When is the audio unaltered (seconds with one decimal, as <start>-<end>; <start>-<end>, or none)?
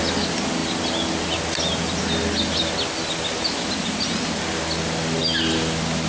0.0-6.1